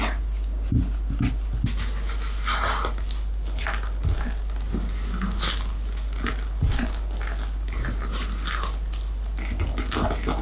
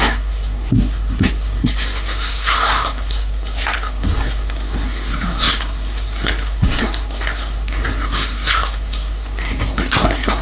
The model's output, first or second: second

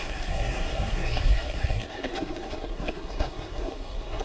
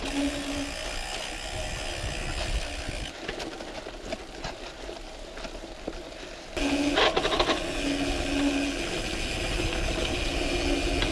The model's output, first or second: first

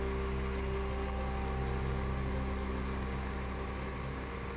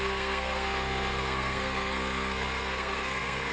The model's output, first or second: second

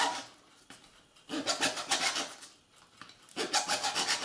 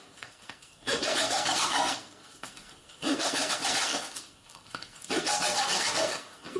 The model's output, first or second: second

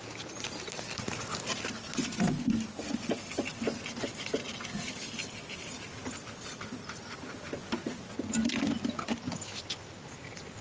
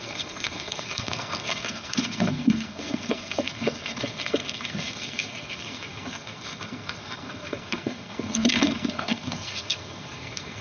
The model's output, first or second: second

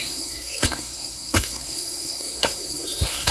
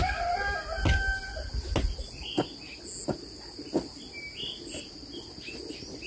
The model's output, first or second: first